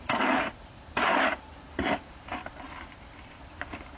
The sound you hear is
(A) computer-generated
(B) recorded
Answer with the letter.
A